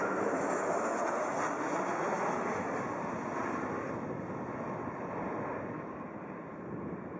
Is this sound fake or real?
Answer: real